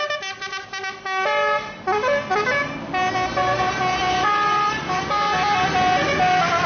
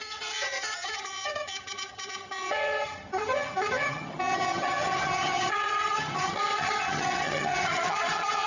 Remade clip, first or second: second